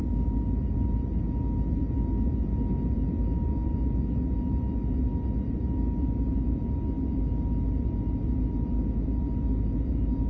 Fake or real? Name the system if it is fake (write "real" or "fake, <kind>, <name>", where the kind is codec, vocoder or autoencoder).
real